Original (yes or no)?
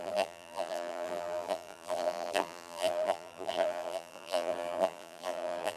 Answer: no